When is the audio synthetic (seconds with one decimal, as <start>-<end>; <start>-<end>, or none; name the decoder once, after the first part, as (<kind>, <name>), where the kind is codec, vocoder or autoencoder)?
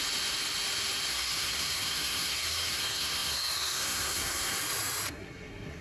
1.1-4.6 (codec, SNAC); 5.1-5.8